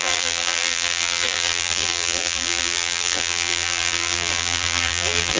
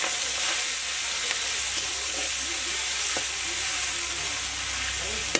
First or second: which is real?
second